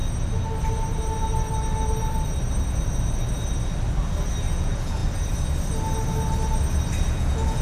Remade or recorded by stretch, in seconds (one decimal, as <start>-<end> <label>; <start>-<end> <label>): 0.0-4.5 recorded; 4.5-5.0 remade; 5.0-7.1 recorded; 7.1-7.6 remade